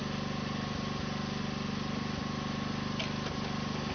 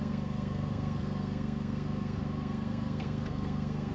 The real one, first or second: first